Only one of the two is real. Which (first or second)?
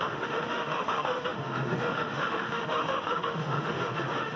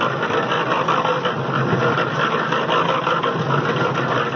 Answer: second